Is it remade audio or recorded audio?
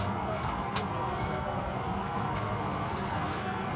remade